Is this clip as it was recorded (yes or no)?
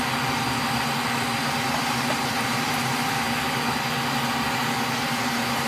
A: yes